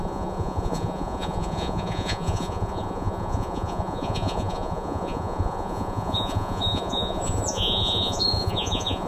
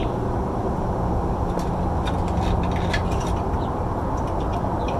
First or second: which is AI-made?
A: first